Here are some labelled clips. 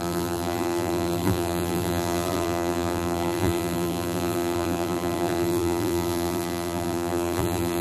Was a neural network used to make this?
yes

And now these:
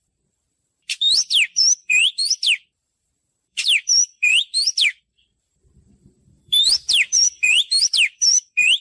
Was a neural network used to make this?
yes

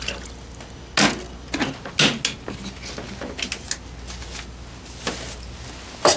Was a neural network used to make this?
no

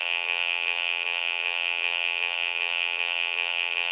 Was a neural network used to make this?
yes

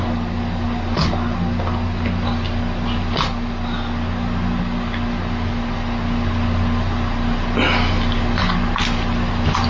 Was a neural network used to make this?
no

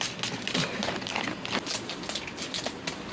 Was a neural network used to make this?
no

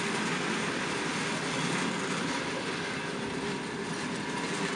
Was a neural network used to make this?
no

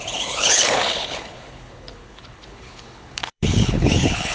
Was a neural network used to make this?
yes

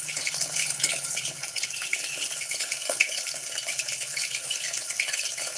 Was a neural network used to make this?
yes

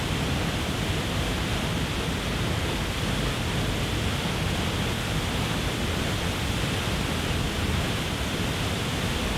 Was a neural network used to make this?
no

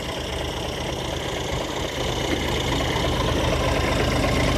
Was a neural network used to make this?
no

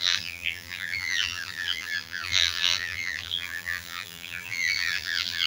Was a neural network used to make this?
yes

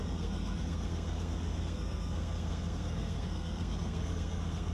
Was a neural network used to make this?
yes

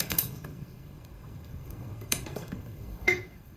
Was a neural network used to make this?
yes